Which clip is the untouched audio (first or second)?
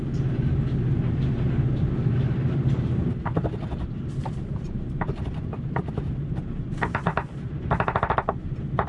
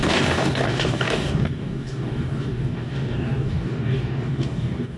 first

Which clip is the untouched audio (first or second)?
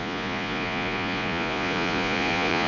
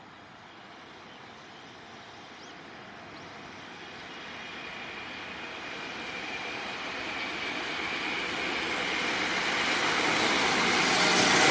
second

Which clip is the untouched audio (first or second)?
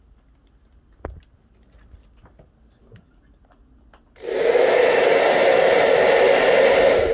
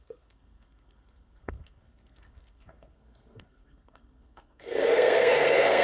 first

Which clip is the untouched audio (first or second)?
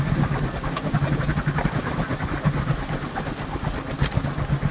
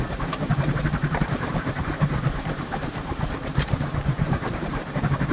first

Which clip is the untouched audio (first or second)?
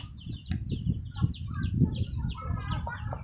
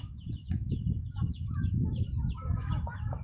first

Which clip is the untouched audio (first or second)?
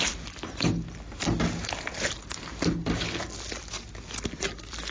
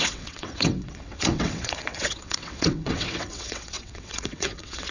first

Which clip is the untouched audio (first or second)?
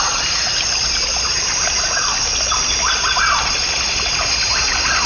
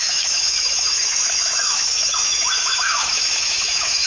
first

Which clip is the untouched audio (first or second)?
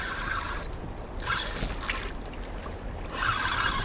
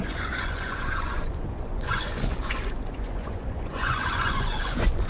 first